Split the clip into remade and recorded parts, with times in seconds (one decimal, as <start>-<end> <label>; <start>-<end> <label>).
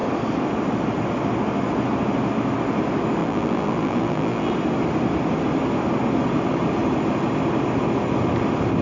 0.0-3.2 recorded; 3.2-4.5 remade; 4.5-8.8 recorded